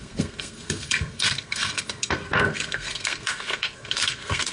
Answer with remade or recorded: remade